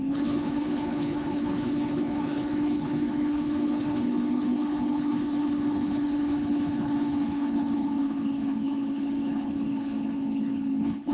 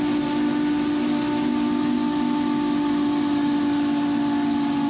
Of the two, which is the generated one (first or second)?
first